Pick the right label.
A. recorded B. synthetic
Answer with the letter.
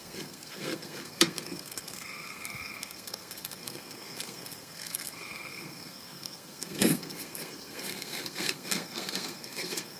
B